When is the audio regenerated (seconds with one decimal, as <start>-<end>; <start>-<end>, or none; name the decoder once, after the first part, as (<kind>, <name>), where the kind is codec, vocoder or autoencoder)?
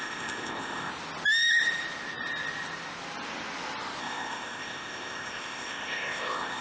0.0-0.9 (codec, ZipCodec); 4.0-6.6